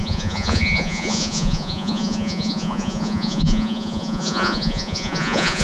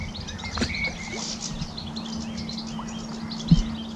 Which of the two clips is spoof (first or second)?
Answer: first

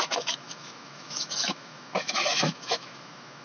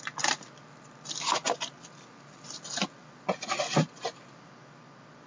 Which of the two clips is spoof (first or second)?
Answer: first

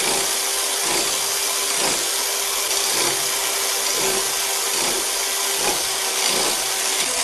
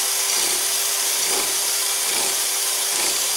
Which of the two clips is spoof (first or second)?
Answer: second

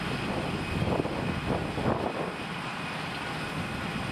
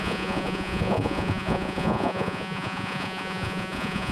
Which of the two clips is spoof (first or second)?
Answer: second